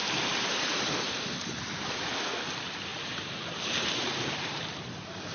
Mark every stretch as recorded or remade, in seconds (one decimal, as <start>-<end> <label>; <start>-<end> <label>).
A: 0.0-2.9 recorded; 2.9-4.6 remade; 4.6-5.3 recorded